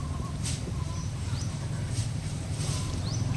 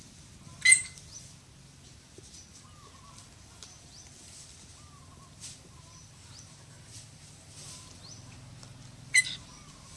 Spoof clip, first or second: first